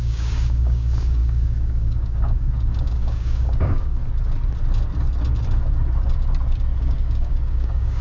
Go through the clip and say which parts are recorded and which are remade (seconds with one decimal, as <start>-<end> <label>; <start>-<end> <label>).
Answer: 0.0-4.0 remade; 4.0-6.8 recorded; 6.8-8.0 remade